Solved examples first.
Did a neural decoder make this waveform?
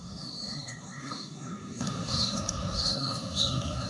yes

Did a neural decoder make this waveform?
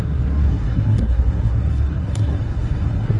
yes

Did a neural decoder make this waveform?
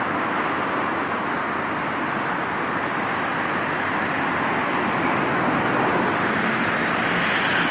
no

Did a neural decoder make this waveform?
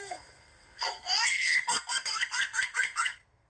yes